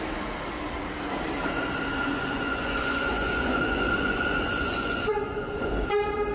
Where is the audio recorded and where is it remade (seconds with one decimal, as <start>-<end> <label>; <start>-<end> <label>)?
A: 0.0-2.0 recorded; 2.0-5.8 remade; 5.8-6.3 recorded